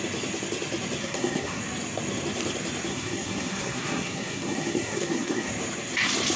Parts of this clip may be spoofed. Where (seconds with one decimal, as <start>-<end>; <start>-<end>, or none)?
1.0-1.6; 2.9-5.5

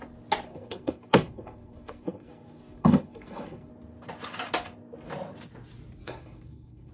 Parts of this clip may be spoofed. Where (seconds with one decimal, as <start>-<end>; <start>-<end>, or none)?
0.5-3.7; 6.0-6.9

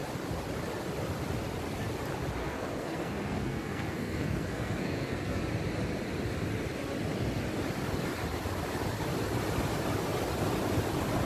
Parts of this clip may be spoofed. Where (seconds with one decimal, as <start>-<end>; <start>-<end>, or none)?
2.4-5.4